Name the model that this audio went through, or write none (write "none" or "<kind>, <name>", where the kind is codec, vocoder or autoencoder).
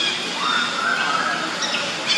none